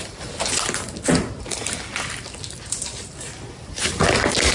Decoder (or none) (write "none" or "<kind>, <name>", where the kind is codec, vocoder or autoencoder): none